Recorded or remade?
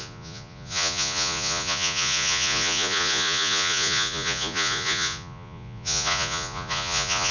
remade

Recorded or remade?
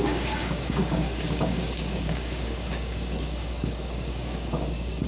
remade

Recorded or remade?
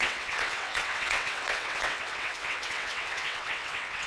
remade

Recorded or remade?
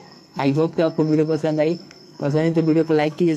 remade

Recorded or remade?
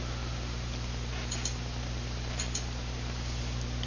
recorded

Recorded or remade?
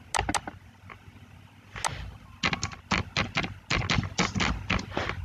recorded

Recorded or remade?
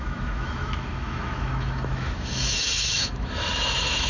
remade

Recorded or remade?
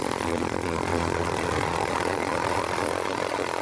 remade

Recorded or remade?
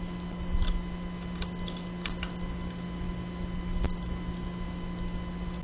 recorded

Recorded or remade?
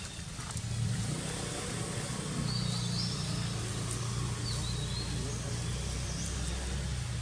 recorded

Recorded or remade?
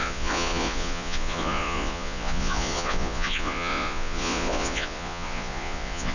remade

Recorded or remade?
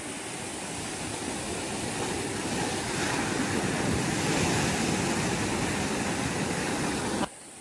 recorded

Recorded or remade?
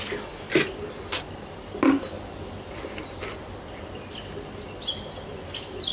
recorded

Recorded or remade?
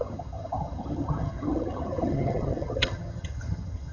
remade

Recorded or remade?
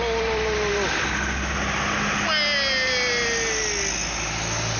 recorded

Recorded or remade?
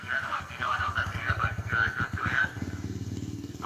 remade